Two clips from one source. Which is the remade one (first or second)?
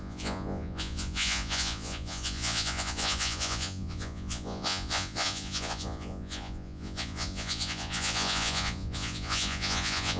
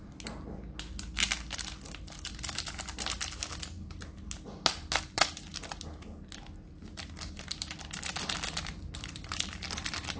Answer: first